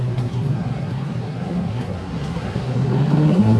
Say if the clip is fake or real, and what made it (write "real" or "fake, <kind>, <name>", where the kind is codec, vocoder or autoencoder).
fake, codec, SNAC